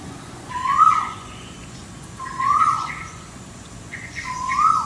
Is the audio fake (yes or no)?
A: yes